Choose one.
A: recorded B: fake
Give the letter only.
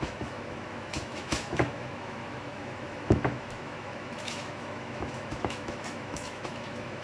B